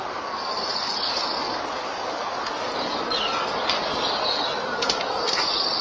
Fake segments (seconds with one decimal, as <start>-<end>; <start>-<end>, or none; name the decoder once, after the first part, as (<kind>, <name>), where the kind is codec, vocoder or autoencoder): none